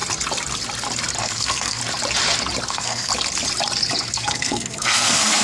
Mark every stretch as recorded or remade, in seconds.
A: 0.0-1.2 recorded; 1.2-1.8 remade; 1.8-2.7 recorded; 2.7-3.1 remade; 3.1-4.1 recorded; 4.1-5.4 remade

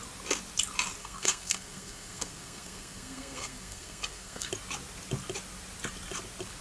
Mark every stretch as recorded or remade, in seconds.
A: 0.0-1.0 recorded; 1.0-4.5 remade; 4.5-6.6 recorded

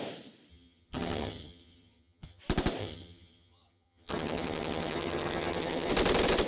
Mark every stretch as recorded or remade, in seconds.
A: 0.0-0.5 recorded; 0.5-2.4 remade; 2.4-2.8 recorded; 2.8-5.9 remade; 5.9-6.5 recorded

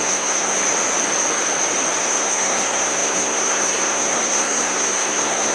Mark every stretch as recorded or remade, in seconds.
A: 0.0-0.6 remade; 0.6-2.0 recorded; 2.0-5.5 remade

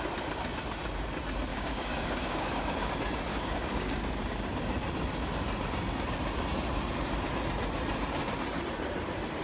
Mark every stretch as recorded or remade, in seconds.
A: 0.0-1.5 recorded; 1.5-2.9 remade; 2.9-3.3 recorded; 3.3-3.9 remade; 3.9-9.4 recorded

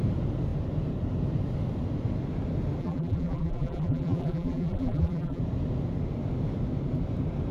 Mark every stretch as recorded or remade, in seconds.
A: 0.0-2.8 recorded; 2.8-5.4 remade; 5.4-7.5 recorded

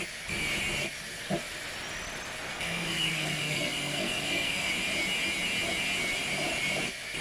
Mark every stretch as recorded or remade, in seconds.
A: 0.0-2.5 recorded; 2.5-4.7 remade; 4.7-7.2 recorded